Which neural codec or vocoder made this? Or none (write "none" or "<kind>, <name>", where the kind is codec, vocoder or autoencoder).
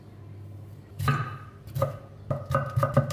none